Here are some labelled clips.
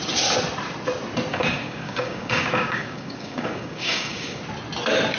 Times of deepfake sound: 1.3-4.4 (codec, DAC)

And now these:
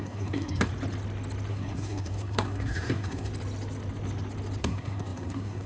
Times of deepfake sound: 0.0-0.7 (codec, SNAC); 1.5-3.3; 4.6-5.7

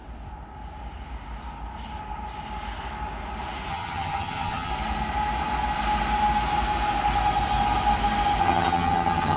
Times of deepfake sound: 3.7-4.7 (vocoder, HiFi-GAN); 8.4-9.4

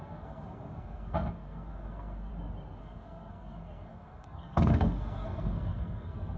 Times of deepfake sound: 0.0-2.3 (codec, SNAC); 2.8-6.4

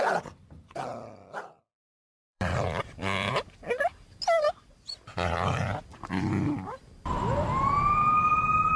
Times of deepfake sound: 0.9-1.6 (vocoder, BigVGAN v2); 2.1-3.3; 5.9-8.8

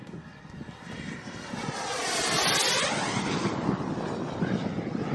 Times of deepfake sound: none

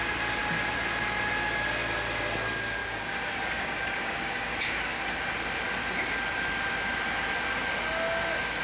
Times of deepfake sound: 2.8-5.0 (codec, DAC)